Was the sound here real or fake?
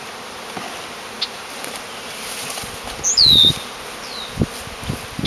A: real